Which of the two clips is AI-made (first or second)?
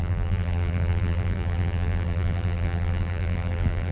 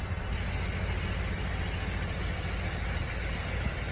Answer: first